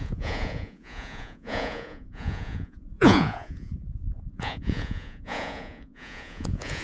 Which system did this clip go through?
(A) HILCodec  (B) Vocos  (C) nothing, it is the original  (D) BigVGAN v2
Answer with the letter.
B